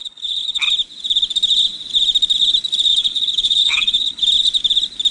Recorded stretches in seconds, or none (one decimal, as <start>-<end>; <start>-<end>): 0.6-2.9; 4.2-5.1